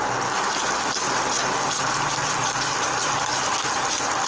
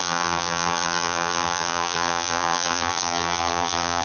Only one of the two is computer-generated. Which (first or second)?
second